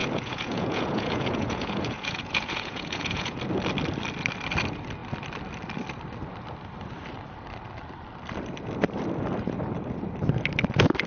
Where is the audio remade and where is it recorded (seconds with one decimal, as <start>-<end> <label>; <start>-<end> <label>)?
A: 0.0-3.4 remade; 3.4-11.1 recorded